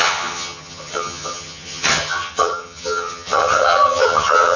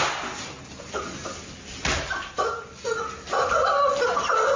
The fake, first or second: first